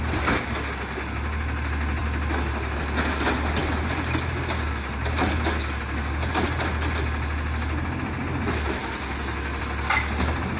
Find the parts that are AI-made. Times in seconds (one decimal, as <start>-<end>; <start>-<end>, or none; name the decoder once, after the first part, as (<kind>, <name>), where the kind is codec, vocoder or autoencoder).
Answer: none